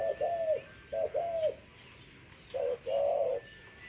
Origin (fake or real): real